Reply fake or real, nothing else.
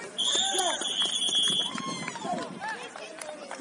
real